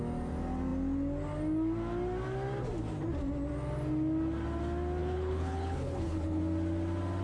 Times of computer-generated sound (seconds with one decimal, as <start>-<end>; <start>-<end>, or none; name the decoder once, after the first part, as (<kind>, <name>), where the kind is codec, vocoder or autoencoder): 5.0-6.4 (codec, HILCodec)